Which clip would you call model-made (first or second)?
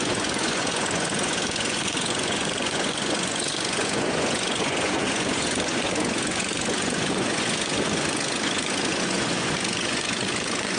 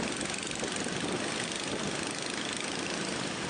first